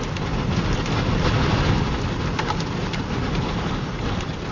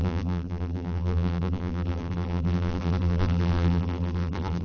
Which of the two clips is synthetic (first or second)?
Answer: second